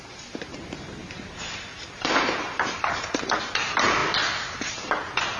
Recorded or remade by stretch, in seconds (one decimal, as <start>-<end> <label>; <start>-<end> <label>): 0.0-4.0 remade; 4.0-4.5 recorded; 4.5-5.4 remade